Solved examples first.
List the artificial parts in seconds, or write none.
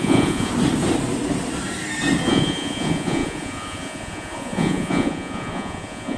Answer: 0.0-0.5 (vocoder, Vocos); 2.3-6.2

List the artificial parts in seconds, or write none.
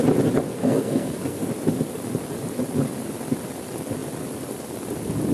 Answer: 0.5-1.5 (codec, SNAC)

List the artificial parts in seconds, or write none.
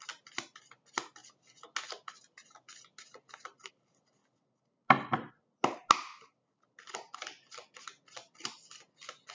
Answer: none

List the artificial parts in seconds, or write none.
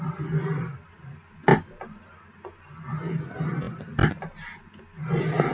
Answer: none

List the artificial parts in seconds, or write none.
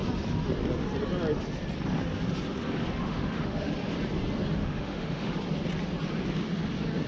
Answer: 3.0-3.7 (autoencoder, DAC-VAE); 4.6-5.4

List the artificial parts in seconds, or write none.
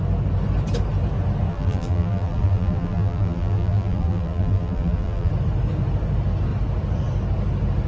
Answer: 1.5-5.3 (vocoder, BigVGAN v2)